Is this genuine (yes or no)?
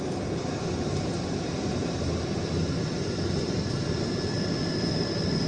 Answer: yes